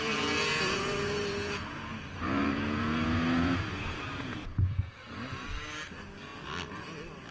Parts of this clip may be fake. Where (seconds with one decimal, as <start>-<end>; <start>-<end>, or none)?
0.5-4.9